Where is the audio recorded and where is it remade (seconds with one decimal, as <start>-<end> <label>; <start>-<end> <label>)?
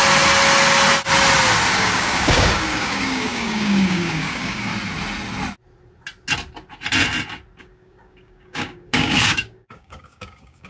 0.0-1.7 recorded; 1.7-4.7 remade; 4.7-7.6 recorded; 7.6-10.7 remade